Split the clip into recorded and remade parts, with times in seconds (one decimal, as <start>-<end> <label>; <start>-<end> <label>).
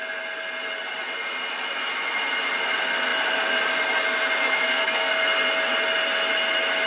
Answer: 0.0-4.4 recorded; 4.4-5.1 remade; 5.1-6.9 recorded